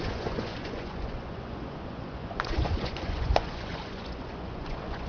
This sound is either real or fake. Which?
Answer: fake